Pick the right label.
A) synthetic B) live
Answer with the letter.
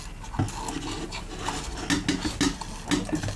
B